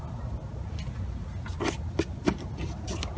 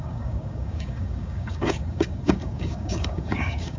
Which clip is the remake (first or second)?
second